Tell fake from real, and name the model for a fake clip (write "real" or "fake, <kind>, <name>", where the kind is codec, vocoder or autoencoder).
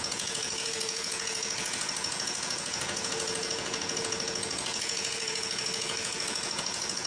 fake, vocoder, Vocos